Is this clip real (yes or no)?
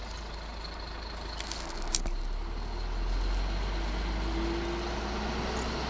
yes